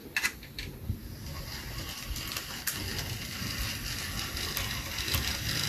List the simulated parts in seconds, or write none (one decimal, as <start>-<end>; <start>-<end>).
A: 1.4-2.9; 4.7-5.7